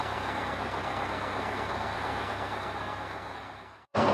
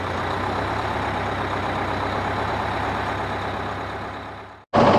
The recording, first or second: second